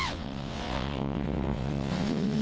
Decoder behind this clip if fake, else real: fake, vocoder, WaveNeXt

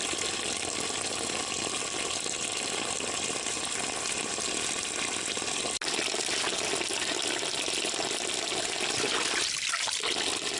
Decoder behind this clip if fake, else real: real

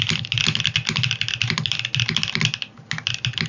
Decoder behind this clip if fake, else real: real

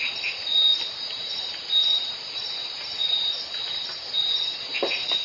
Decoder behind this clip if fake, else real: fake, vocoder, BigVGAN v2